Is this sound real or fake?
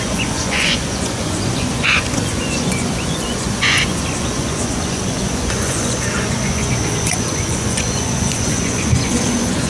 fake